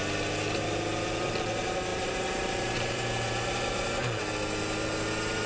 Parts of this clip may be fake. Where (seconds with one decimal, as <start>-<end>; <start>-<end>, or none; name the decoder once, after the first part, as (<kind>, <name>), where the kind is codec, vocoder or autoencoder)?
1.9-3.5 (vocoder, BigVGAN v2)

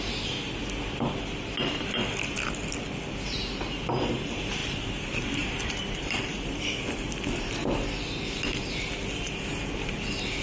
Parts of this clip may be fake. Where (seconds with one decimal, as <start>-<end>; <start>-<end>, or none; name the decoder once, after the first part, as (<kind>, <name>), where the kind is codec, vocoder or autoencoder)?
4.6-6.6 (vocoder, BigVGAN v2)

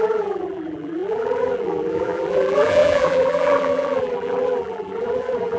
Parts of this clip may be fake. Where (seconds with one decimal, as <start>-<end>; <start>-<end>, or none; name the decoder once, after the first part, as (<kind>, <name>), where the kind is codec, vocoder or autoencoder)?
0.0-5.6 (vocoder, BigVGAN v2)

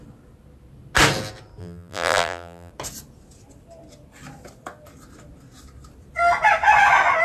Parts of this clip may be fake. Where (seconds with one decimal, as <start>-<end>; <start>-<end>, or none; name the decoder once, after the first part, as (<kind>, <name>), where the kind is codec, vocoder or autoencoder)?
1.6-2.7 (vocoder, BigVGAN v2)